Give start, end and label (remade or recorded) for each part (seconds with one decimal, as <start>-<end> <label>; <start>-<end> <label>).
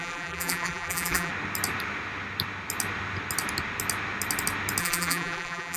0.0-1.3 remade; 1.3-4.8 recorded; 4.8-5.8 remade